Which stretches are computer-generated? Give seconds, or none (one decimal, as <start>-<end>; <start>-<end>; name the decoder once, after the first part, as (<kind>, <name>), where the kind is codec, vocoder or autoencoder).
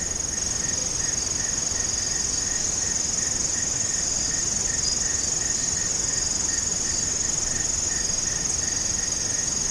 none